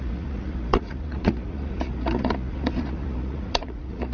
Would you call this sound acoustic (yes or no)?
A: no